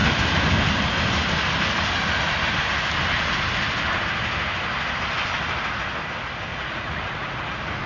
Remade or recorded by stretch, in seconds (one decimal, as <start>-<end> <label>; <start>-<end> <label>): 0.0-6.5 recorded; 6.5-7.4 remade; 7.4-7.9 recorded